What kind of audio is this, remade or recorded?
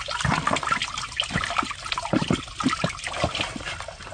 recorded